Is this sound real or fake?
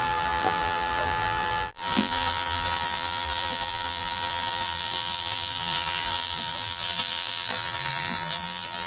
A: fake